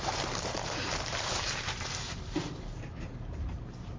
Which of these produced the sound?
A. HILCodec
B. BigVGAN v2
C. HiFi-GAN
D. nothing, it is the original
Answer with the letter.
B